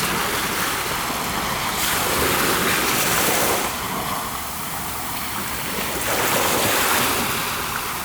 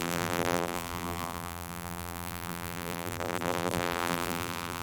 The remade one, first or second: second